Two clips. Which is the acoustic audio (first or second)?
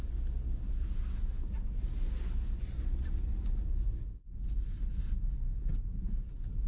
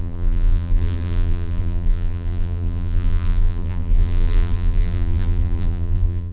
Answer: first